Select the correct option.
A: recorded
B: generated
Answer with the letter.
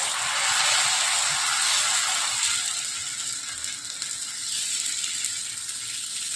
A